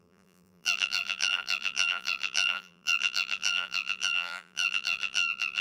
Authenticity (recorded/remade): remade